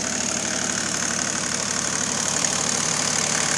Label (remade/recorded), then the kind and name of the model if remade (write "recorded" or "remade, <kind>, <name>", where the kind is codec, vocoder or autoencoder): remade, vocoder, BigVGAN v2